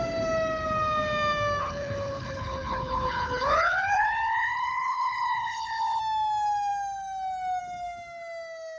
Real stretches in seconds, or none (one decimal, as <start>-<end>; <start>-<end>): 0.0-1.6; 6.0-8.8